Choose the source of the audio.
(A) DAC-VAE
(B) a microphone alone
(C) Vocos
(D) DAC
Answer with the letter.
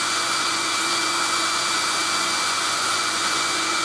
C